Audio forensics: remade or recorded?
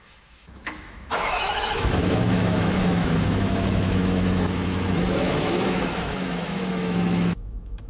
remade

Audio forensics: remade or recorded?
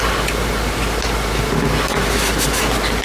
recorded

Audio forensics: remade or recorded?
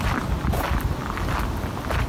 recorded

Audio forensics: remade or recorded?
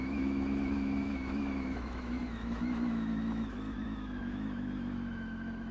remade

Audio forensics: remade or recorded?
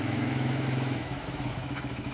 remade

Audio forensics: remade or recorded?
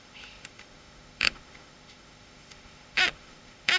remade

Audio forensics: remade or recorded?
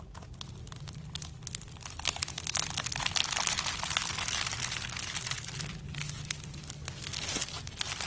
recorded